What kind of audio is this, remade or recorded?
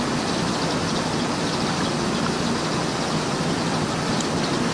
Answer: recorded